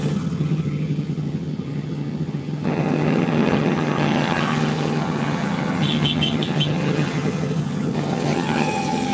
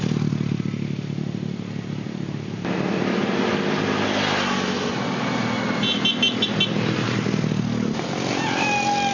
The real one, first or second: second